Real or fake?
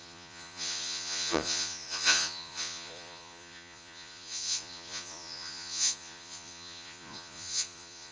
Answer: fake